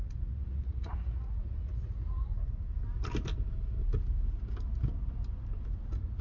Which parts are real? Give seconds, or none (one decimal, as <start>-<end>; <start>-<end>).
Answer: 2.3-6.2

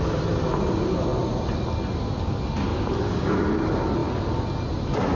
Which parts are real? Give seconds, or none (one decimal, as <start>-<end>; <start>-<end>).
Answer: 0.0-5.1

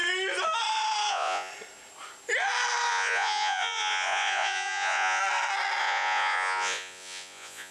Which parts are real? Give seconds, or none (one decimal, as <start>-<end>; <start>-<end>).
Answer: 0.0-1.1; 1.5-2.9; 5.2-5.8

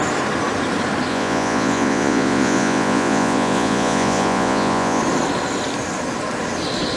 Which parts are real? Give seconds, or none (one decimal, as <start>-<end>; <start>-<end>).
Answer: 0.0-1.1; 5.0-7.0